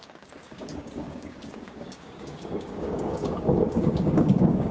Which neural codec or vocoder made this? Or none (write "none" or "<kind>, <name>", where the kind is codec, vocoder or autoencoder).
codec, DAC